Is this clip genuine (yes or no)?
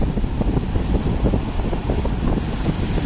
yes